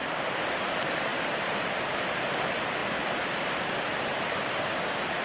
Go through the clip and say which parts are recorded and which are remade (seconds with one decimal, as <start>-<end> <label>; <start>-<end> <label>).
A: 0.0-0.7 remade; 0.7-1.1 recorded; 1.1-1.7 remade; 1.7-5.2 recorded